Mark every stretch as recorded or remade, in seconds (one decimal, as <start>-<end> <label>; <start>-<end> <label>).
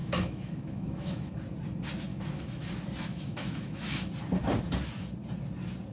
0.0-1.3 remade; 1.3-2.1 recorded; 2.1-2.7 remade; 2.7-3.1 recorded; 3.1-4.1 remade; 4.1-5.9 recorded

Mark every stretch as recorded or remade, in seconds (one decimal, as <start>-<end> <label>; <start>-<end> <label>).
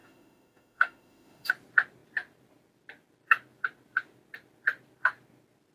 0.0-1.5 remade; 1.5-5.7 recorded